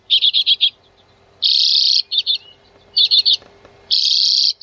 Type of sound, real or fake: real